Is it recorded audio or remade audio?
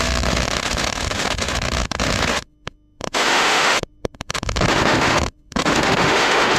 remade